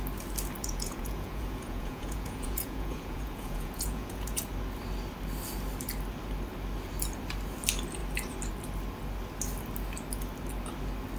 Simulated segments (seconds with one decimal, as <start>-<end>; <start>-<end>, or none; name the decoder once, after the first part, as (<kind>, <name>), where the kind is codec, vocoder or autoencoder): 0.6-4.4 (vocoder, Vocos)